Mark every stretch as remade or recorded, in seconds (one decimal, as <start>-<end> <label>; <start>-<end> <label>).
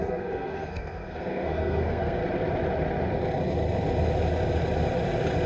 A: 0.0-2.2 remade; 2.2-5.5 recorded